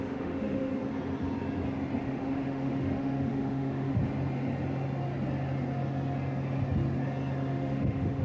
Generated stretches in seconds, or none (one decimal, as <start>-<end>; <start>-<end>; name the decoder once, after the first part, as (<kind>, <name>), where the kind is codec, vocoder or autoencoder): 0.0-0.7 (autoencoder, DAC-VAE); 2.0-4.0; 7.5-8.2